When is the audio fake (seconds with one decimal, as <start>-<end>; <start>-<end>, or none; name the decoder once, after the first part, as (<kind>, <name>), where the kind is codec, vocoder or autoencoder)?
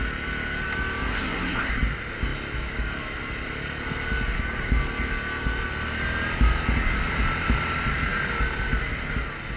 1.1-1.7 (codec, SNAC)